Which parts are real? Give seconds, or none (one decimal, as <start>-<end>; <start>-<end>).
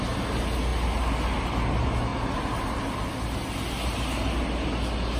0.0-5.2